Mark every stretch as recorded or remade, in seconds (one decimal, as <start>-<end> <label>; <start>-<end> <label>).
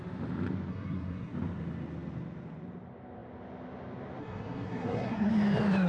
0.0-0.7 recorded; 0.7-1.3 remade; 1.3-4.2 recorded; 4.2-5.3 remade; 5.3-5.9 recorded